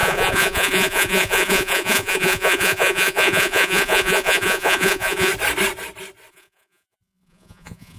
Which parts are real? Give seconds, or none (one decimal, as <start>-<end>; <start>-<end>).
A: 5.3-6.3